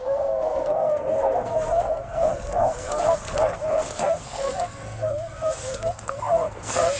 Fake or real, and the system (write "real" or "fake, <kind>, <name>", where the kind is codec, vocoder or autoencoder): fake, codec, SNAC